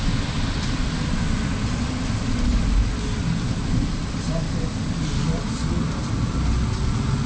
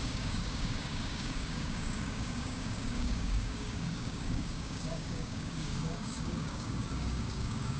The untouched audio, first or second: first